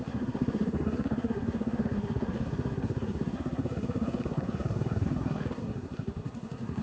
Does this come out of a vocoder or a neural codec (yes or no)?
yes